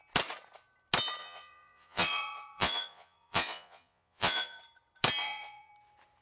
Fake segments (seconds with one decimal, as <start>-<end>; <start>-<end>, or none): 1.2-4.6; 5.2-5.7